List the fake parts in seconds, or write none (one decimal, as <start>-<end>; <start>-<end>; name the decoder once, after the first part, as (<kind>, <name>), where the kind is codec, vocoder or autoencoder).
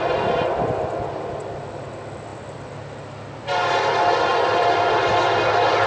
2.3-2.8 (vocoder, BigVGAN v2); 4.3-4.8